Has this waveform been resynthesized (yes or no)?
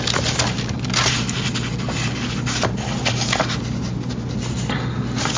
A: no